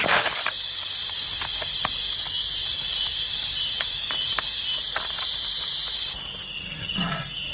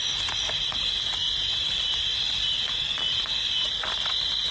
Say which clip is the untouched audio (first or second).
first